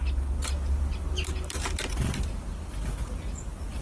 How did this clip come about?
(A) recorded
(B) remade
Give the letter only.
A